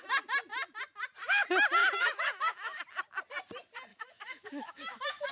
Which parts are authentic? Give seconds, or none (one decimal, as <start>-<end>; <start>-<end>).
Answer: 0.0-1.8; 2.8-3.9